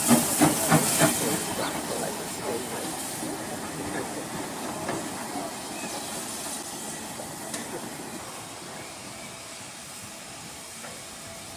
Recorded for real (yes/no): yes